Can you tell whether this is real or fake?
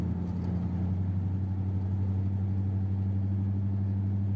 real